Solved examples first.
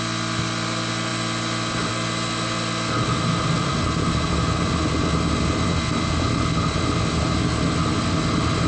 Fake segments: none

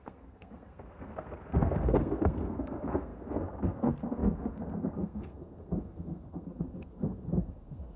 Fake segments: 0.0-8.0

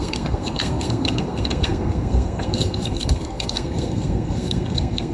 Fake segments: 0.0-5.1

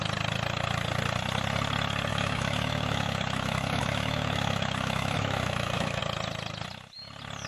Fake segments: 2.1-6.0

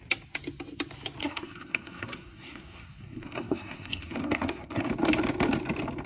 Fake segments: 1.2-4.9